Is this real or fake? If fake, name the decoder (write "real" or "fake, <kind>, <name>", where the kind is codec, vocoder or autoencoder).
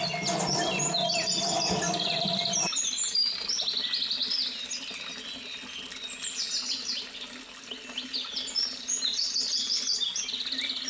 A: real